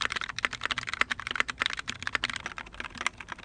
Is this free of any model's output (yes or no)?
yes